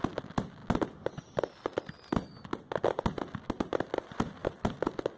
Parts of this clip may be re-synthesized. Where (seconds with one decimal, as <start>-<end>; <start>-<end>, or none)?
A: none